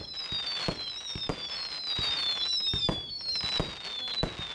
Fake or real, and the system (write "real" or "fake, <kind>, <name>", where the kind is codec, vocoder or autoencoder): real